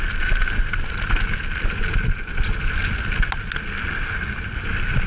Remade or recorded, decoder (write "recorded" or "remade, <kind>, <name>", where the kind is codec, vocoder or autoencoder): recorded